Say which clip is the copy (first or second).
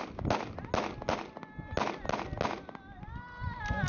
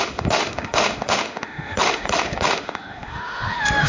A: second